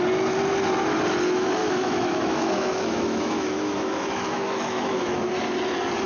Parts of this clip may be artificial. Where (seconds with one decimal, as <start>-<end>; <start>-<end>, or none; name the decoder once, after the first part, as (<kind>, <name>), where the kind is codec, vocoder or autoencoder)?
1.6-5.3 (autoencoder, DAC-VAE)